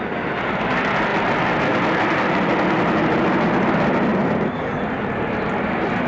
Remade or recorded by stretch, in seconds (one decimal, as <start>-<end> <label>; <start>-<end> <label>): 0.0-6.1 recorded

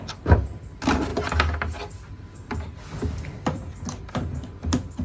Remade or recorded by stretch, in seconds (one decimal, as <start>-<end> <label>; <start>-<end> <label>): 0.0-5.0 recorded

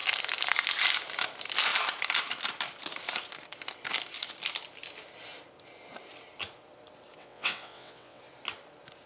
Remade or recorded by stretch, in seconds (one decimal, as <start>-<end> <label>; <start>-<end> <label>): 0.0-7.2 recorded; 7.2-8.2 remade; 8.2-9.1 recorded

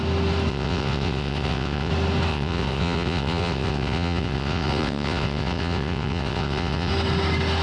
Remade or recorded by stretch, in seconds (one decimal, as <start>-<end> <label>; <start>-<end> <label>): 0.0-0.5 recorded; 0.5-1.9 remade; 1.9-2.3 recorded; 2.3-6.9 remade; 6.9-7.6 recorded